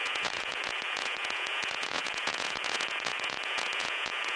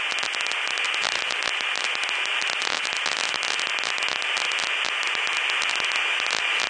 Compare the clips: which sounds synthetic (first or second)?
first